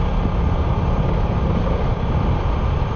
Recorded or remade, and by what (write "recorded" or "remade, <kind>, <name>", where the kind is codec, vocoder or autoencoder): recorded